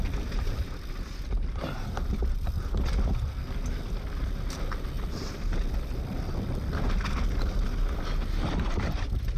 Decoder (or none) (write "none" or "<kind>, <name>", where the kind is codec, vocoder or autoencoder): none